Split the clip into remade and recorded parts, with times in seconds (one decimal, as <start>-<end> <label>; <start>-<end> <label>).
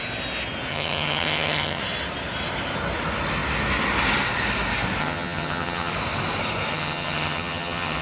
0.0-0.7 recorded; 0.7-1.8 remade; 1.8-5.0 recorded; 5.0-5.9 remade; 5.9-6.7 recorded; 6.7-8.0 remade